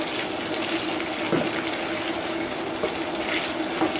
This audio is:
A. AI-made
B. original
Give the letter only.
B